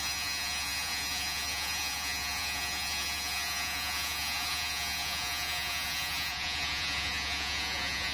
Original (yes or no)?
no